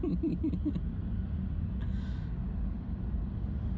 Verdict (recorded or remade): recorded